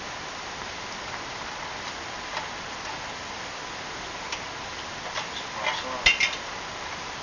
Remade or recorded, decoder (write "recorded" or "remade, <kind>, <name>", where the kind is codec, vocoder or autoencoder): recorded